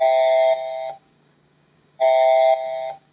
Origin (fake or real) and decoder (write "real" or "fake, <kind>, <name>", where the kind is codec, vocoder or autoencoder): fake, codec, DAC